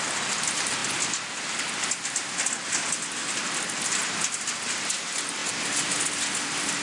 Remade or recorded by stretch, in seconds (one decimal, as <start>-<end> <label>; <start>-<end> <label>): 0.0-6.8 recorded

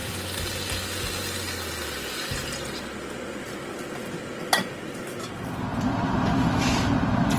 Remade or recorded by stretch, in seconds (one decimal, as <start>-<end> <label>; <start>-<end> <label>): 0.0-7.4 recorded

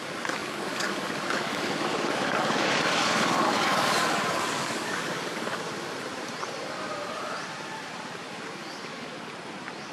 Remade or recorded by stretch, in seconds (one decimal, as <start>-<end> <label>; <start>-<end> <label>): 0.0-0.4 recorded; 0.4-5.6 remade; 5.6-8.6 recorded; 8.6-9.3 remade; 9.3-9.9 recorded